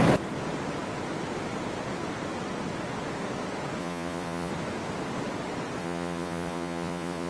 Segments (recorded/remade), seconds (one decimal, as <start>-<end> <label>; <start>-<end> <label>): 0.0-3.8 recorded; 3.8-4.5 remade; 4.5-5.8 recorded; 5.8-7.3 remade